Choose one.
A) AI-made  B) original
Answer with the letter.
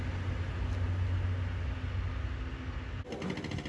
B